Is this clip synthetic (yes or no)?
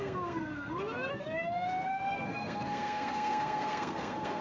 yes